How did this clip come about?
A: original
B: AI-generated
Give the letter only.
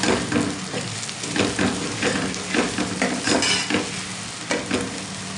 A